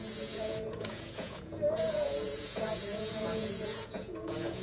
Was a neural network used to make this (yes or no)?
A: yes